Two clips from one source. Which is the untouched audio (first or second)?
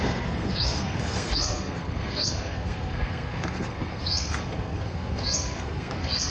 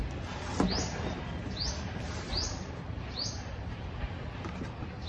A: second